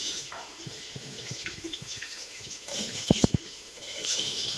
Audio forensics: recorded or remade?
remade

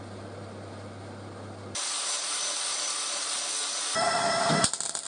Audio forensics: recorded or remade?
remade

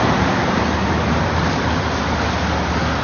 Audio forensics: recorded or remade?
recorded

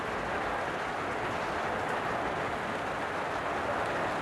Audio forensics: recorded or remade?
recorded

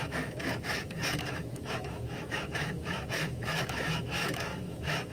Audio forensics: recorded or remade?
remade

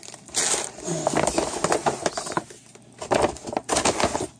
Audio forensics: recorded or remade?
recorded